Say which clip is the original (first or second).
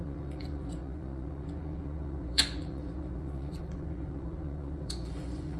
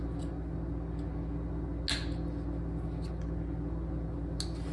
second